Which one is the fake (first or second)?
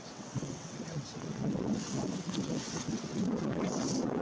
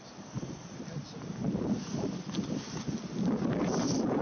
first